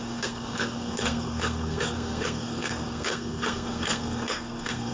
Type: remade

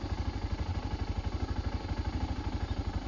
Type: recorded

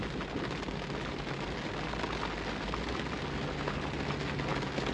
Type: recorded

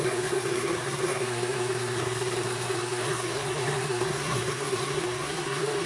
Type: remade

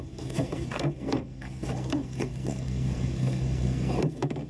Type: remade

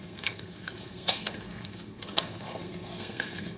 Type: remade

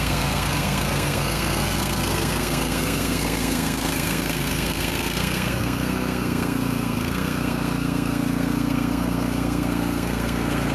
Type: remade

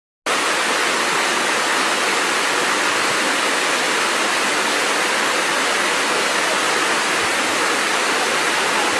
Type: recorded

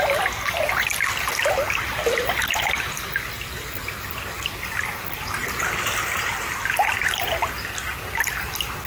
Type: recorded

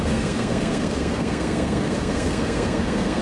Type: remade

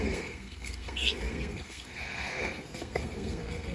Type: remade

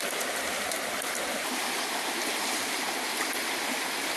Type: recorded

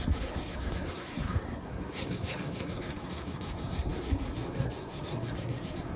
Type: remade